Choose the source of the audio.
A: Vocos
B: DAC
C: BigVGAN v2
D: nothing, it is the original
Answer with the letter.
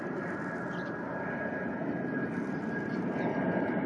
D